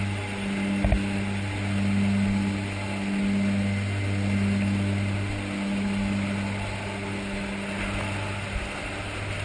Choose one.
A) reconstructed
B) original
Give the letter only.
B